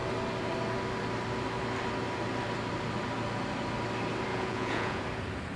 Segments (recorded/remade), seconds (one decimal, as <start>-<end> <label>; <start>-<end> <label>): 0.0-4.3 recorded; 4.3-5.0 remade; 5.0-5.6 recorded